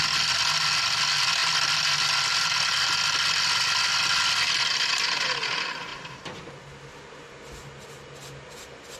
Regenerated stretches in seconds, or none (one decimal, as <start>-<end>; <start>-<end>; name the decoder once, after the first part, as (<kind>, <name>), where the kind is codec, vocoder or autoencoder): 5.9-6.5 (vocoder, BigVGAN v2)